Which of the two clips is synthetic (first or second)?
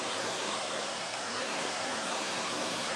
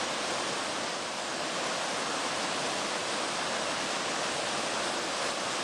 first